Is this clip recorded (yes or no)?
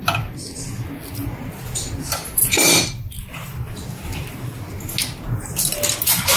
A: yes